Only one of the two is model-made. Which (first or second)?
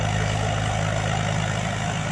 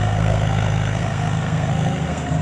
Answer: second